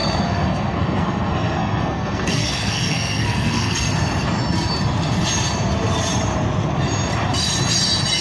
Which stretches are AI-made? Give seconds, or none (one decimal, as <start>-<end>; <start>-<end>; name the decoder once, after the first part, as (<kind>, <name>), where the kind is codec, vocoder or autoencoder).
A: 0.0-3.9 (codec, SNAC)

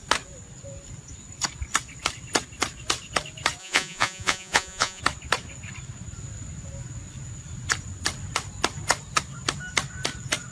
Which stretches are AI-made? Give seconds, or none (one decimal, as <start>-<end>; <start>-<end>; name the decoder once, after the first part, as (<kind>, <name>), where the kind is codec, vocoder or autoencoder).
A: 3.6-5.0 (vocoder, Vocos)

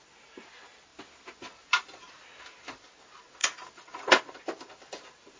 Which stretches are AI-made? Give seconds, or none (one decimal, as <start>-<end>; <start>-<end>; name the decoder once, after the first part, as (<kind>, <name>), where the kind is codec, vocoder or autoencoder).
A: 3.4-4.3 (vocoder, Vocos)

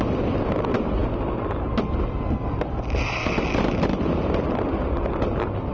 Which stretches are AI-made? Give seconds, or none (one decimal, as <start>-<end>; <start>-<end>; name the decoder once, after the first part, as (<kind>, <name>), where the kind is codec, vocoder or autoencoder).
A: none

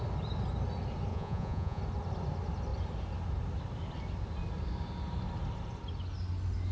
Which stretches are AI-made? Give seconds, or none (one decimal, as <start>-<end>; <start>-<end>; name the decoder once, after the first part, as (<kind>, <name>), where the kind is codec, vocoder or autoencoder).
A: 1.1-1.8 (vocoder, Vocos)

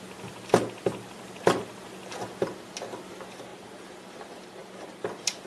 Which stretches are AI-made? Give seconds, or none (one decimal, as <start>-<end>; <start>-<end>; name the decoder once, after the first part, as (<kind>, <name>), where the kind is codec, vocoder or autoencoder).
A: none

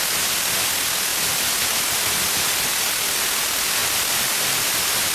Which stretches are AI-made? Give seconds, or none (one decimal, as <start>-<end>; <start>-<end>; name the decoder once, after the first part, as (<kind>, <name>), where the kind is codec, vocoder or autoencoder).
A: none